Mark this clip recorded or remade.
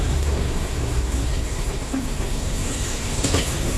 remade